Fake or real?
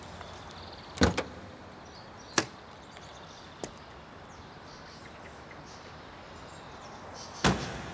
real